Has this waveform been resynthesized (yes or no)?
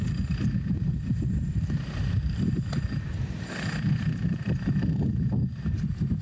no